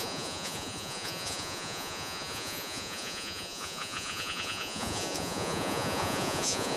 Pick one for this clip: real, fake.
fake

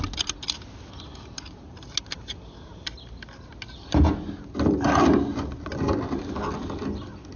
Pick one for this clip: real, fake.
real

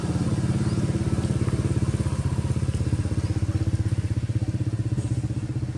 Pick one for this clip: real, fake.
real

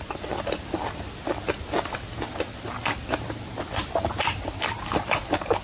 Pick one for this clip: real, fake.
real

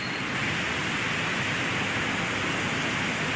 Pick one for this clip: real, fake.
real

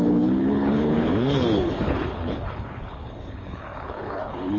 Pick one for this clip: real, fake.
fake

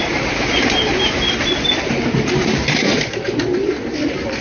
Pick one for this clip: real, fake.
real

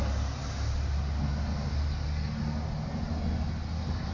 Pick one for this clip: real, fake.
real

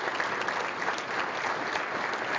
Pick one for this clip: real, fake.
real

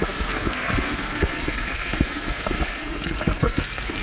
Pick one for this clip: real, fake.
fake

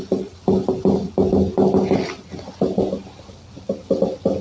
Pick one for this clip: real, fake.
real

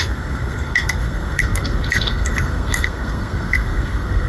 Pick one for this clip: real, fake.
fake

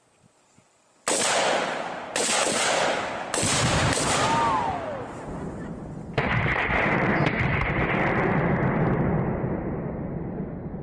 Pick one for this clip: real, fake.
real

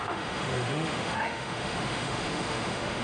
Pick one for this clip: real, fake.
fake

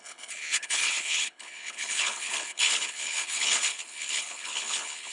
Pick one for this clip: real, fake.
fake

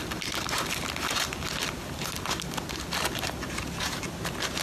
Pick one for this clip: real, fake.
real